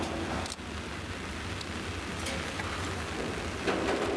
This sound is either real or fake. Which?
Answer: real